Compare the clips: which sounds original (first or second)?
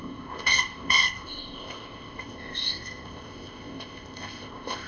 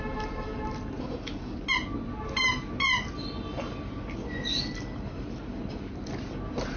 second